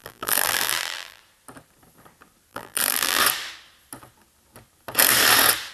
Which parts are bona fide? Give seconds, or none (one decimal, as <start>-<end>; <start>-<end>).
1.2-2.5; 3.2-5.7